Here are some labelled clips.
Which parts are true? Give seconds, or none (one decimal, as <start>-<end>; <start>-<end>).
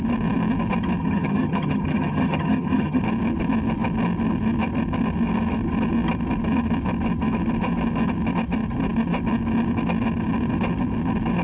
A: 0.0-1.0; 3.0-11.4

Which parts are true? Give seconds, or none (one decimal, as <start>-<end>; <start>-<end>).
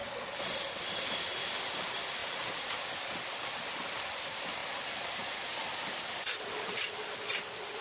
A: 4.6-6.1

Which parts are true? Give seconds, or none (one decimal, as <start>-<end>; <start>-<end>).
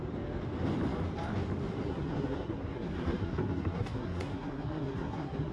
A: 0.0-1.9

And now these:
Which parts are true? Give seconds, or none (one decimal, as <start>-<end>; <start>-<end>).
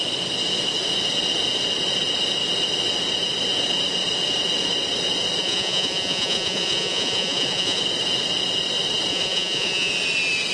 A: 0.0-5.4; 7.8-9.1; 9.9-10.5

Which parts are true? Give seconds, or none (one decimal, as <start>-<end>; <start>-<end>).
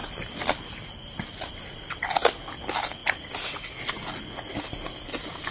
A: 0.0-5.5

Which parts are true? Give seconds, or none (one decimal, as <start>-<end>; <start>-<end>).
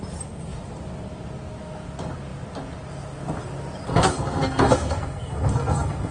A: 0.0-3.9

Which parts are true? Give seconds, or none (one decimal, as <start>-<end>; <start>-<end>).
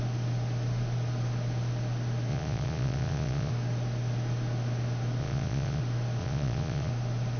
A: 0.0-2.3; 3.5-5.2; 5.8-6.2; 6.9-7.4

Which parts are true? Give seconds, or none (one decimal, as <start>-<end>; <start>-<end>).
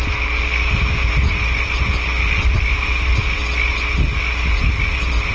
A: 0.0-5.3